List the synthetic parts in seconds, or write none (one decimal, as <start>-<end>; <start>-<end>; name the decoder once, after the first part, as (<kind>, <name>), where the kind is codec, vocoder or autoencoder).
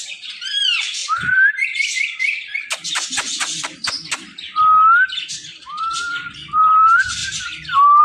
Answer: 0.0-1.0 (vocoder, BigVGAN v2); 5.8-7.2